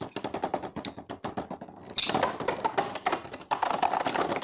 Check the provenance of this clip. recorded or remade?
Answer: recorded